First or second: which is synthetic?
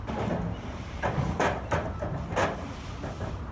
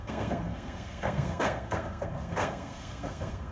second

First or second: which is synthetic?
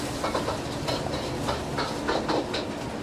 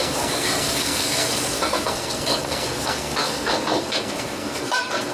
second